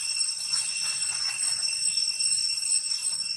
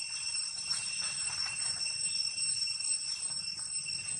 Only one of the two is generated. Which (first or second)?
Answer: first